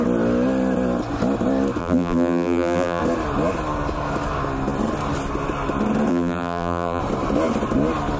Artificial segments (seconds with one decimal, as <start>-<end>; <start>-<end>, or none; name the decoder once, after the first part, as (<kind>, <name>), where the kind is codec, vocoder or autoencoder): 1.8-3.0 (vocoder, BigVGAN v2); 6.1-7.0